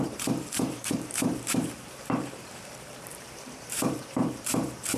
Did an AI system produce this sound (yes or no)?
yes